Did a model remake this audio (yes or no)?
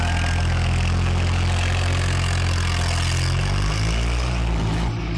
no